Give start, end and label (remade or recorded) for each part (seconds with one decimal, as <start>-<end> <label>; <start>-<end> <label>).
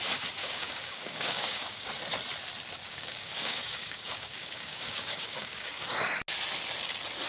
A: 0.0-0.4 recorded; 0.4-1.9 remade; 1.9-2.8 recorded; 2.8-6.2 remade; 6.2-7.3 recorded